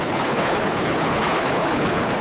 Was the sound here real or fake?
fake